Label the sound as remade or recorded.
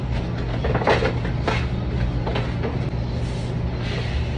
recorded